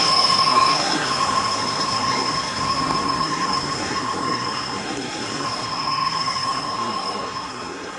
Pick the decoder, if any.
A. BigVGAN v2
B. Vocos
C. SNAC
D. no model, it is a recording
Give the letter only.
C